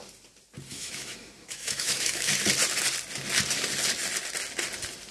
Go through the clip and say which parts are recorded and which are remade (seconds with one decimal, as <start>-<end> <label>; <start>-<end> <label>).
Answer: 0.0-0.7 recorded; 0.7-2.3 remade; 2.3-5.1 recorded

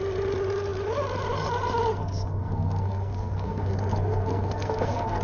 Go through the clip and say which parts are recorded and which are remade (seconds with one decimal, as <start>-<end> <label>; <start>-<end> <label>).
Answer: 0.0-1.9 recorded; 1.9-5.2 remade

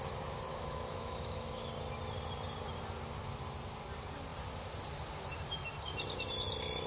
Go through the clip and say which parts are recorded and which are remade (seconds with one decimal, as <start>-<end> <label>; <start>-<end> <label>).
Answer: 0.0-0.5 recorded; 0.5-1.7 remade; 1.7-6.9 recorded